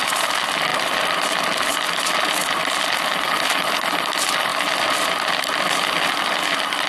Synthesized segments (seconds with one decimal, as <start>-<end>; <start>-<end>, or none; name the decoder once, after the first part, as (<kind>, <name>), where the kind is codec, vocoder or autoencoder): none